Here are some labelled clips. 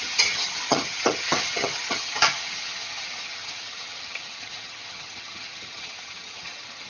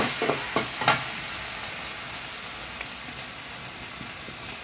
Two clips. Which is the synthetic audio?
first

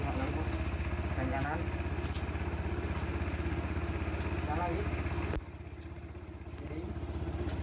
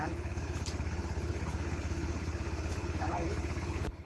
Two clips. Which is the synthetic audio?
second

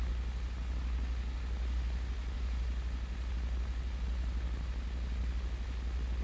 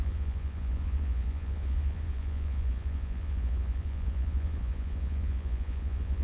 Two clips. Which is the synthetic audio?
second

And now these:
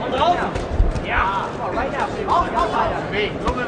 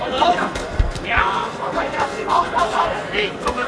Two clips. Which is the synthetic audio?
second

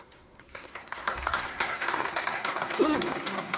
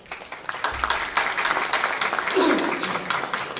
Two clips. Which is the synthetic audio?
first